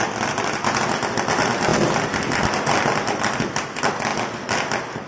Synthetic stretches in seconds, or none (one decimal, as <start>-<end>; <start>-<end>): none